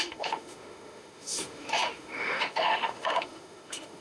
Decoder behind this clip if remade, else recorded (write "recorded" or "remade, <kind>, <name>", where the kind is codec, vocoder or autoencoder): remade, autoencoder, DAC-VAE